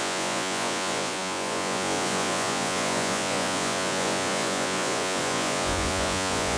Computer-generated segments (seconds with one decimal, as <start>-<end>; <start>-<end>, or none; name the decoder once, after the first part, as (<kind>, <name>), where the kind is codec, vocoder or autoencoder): 0.0-6.6 (vocoder, Vocos)